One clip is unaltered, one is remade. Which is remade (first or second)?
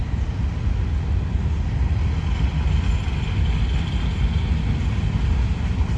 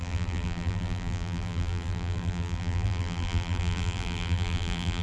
second